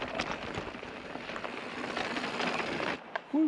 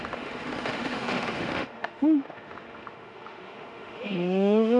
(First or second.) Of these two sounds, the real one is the first